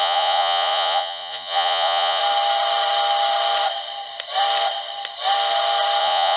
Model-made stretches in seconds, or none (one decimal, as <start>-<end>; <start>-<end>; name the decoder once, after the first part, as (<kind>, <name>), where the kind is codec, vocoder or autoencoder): 0.0-2.2 (vocoder, Vocos); 6.0-6.4